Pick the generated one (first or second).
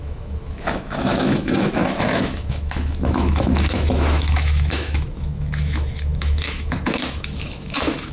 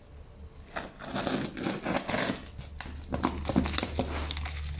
first